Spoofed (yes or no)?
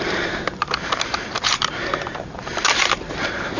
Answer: yes